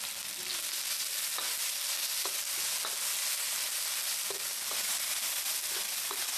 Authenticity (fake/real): real